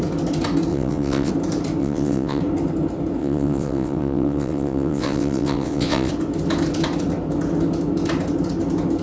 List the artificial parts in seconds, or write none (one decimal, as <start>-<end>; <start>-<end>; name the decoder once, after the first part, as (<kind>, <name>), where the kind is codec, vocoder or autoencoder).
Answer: 0.7-1.3 (vocoder, WaveNeXt); 1.8-2.4; 3.2-6.1